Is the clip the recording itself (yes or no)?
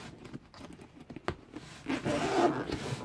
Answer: yes